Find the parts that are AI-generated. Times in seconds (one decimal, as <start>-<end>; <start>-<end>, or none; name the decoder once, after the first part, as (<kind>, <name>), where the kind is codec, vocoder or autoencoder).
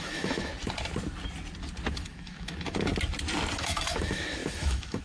0.0-0.5 (autoencoder, DAC-VAE); 1.9-2.9; 3.6-5.0